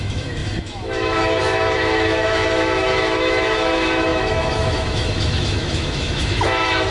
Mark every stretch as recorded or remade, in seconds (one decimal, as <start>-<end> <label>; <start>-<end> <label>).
0.0-6.9 remade

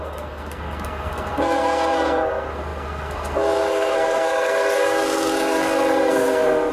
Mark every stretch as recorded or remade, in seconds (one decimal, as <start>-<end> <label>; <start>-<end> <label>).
0.0-6.7 remade

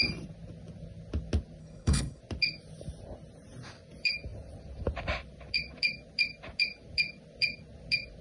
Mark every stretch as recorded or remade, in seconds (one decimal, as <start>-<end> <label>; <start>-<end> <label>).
0.0-1.6 recorded; 1.6-2.2 remade; 2.2-8.2 recorded

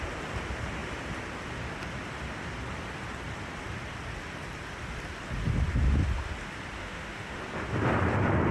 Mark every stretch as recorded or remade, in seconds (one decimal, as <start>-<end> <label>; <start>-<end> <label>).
0.0-6.8 recorded; 6.8-7.4 remade; 7.4-8.5 recorded

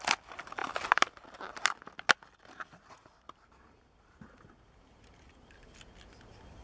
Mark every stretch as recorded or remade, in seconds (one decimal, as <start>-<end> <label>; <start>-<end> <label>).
0.0-6.6 recorded

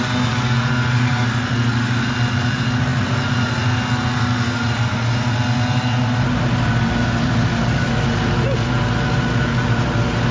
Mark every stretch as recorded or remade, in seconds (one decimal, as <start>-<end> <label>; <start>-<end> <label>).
0.0-10.3 recorded

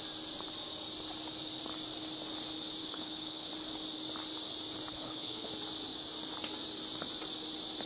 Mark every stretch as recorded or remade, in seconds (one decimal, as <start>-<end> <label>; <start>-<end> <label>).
0.0-2.8 recorded; 2.8-3.5 remade; 3.5-4.9 recorded; 4.9-5.5 remade; 5.5-7.9 recorded

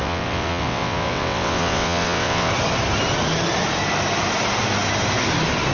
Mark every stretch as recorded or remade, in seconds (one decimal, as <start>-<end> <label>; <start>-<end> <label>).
0.0-2.5 remade; 2.5-5.7 recorded